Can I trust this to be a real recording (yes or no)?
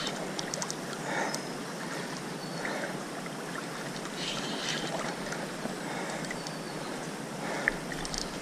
yes